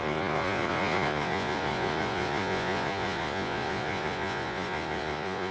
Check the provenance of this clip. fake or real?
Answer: fake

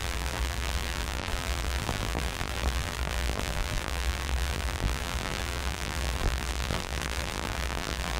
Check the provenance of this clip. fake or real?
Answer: fake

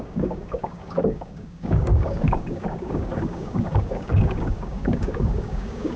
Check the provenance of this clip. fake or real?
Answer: fake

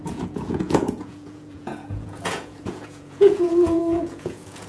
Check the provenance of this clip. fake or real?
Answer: fake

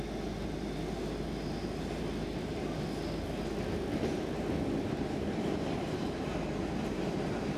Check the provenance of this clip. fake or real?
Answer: real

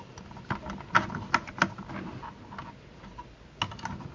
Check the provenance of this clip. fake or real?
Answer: real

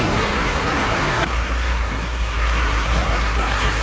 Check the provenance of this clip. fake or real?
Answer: fake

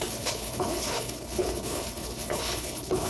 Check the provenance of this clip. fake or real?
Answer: fake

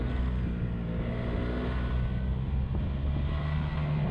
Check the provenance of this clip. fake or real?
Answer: real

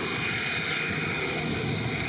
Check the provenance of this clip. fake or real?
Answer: real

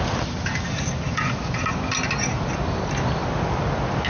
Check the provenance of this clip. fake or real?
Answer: real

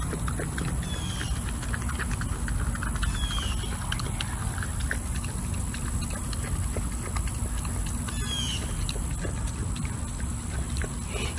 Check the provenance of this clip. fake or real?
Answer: real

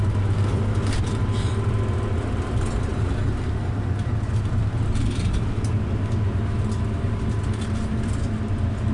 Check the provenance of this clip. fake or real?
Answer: real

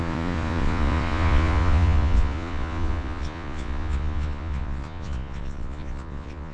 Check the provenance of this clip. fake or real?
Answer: fake